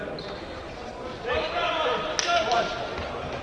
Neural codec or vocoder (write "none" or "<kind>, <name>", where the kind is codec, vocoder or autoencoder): none